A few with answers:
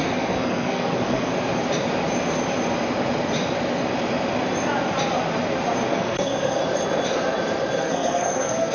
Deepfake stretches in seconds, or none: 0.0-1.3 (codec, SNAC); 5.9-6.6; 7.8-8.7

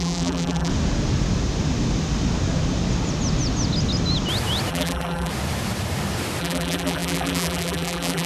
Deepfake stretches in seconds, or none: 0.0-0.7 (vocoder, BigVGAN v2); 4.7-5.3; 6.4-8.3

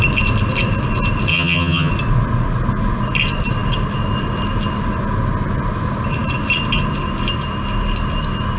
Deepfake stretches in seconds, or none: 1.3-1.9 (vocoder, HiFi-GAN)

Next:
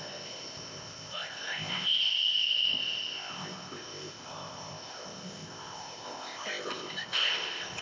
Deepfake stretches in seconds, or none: 0.0-7.8 (codec, ZipCodec)

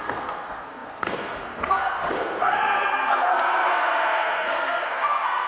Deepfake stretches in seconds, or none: 0.0-5.5 (codec, SNAC)

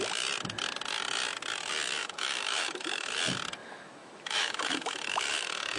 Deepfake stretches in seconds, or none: 2.0-3.1 (autoencoder, DAC-VAE); 3.6-5.8

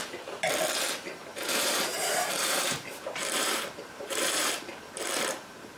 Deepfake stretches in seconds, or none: 1.3-4.8 (vocoder, BigVGAN v2)

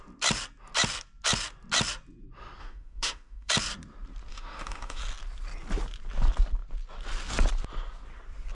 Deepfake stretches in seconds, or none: 2.6-3.5 (autoencoder, DAC-VAE); 4.3-5.0